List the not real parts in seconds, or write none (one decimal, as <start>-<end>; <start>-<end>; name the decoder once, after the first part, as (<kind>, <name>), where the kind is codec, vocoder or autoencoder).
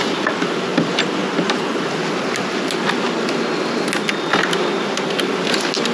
none